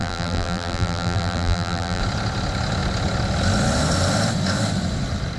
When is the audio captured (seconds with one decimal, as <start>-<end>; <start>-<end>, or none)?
2.0-5.4